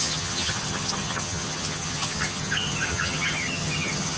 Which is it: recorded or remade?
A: remade